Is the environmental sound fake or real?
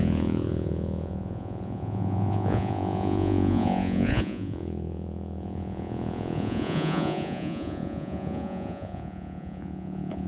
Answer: fake